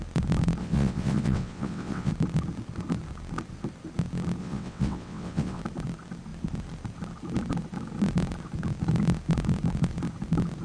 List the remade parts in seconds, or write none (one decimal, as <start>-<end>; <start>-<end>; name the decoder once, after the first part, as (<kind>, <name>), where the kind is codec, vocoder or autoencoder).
0.6-2.1 (vocoder, WaveNeXt); 4.4-5.6